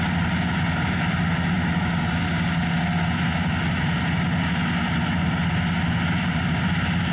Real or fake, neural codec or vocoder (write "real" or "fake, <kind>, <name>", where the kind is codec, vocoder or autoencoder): real